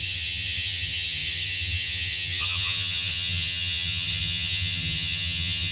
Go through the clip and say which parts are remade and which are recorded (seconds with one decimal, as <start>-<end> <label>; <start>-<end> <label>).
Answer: 0.0-5.7 remade